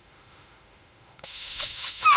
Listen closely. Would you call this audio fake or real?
fake